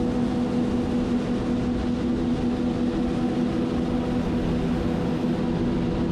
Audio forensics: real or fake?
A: real